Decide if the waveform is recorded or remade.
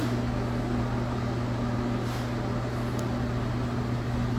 recorded